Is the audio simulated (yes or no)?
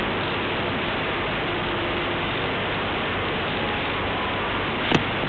no